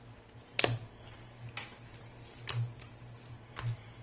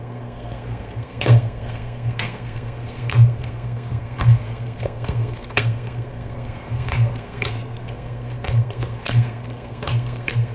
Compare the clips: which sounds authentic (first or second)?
first